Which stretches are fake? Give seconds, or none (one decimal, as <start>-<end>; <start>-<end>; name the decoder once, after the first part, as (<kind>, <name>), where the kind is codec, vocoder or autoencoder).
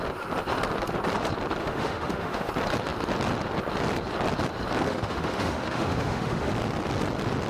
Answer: 1.6-2.5 (autoencoder, DAC-VAE); 4.9-6.5